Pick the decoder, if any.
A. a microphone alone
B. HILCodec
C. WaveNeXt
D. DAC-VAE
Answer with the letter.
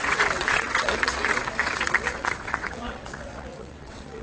C